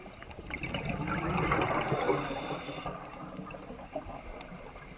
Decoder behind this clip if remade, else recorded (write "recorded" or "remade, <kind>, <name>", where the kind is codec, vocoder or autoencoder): recorded